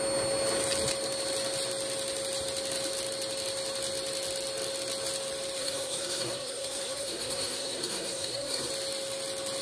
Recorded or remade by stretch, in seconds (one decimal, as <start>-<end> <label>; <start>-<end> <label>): 0.0-5.6 recorded; 5.6-8.7 remade; 8.7-9.6 recorded